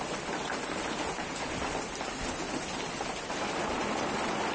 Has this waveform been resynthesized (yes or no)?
no